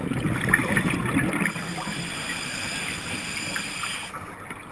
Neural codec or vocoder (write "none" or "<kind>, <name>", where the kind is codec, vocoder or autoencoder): none